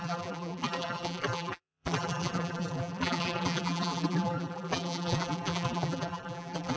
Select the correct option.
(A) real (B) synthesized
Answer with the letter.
B